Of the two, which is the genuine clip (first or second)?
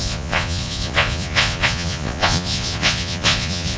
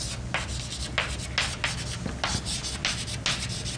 second